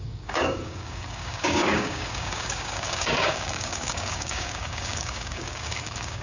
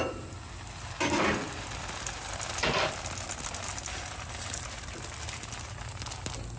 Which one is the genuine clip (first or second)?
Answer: second